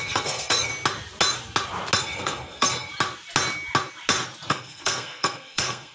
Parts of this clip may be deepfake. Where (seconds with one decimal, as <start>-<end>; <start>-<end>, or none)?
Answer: 0.0-0.7; 2.0-2.9; 4.5-5.9